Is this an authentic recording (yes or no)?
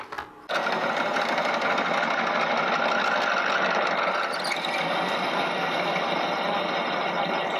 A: yes